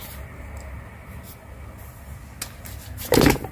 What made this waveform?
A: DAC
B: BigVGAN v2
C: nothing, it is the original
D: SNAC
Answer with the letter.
C